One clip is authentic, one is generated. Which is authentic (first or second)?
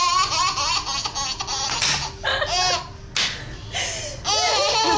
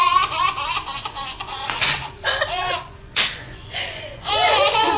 first